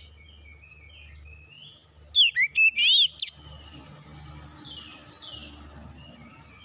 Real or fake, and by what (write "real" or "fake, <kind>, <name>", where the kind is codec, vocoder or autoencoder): real